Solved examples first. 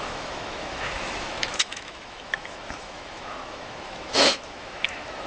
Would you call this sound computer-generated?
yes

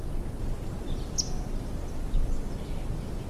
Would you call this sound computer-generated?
no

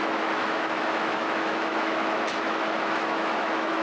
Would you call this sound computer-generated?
yes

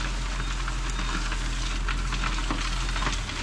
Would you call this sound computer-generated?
no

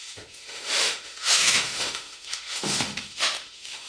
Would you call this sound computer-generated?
yes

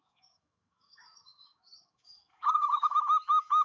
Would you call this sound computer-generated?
yes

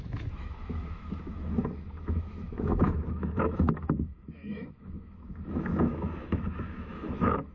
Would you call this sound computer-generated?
yes